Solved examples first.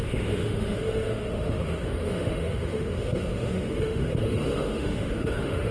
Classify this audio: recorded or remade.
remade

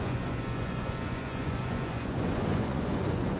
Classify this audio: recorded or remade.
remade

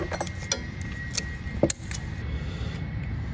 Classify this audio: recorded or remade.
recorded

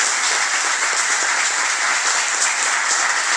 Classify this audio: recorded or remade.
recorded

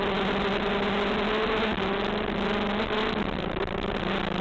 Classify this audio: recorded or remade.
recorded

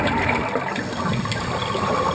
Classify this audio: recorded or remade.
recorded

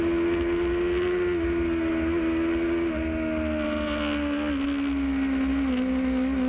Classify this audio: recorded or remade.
recorded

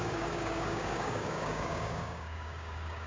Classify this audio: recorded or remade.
remade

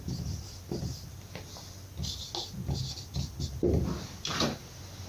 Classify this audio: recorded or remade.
recorded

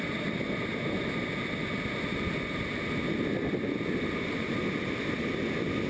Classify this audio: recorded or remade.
recorded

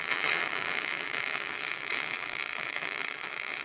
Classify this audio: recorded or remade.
remade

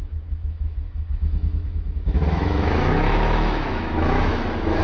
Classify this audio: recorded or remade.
remade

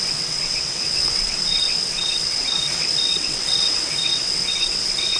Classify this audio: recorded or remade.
remade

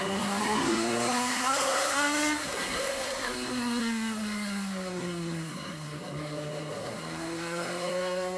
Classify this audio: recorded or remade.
remade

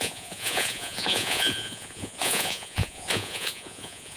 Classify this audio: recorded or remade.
remade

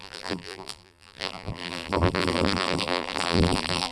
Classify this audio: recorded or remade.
remade